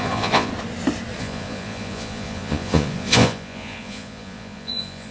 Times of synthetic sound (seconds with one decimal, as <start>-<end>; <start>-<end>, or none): 0.0-0.5; 1.2-5.1

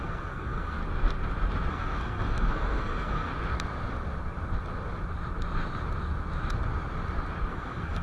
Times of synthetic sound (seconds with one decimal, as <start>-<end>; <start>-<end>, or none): 0.0-0.8; 1.7-3.3; 7.5-8.0